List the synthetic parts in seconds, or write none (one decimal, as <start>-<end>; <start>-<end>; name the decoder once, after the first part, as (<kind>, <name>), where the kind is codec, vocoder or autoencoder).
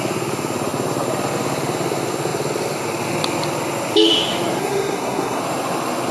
4.6-5.4 (codec, SNAC)